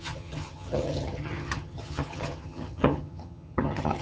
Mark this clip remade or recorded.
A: remade